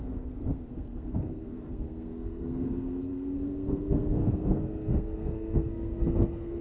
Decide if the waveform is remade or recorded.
remade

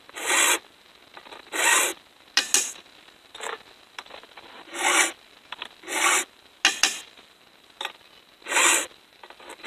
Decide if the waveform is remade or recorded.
recorded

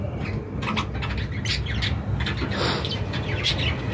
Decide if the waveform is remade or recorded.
recorded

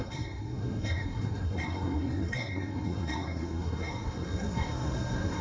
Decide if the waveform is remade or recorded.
remade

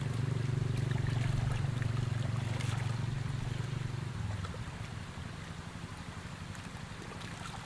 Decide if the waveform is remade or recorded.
recorded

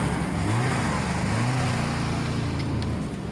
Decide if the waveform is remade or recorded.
recorded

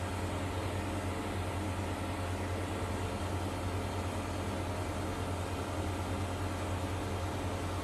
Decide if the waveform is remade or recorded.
recorded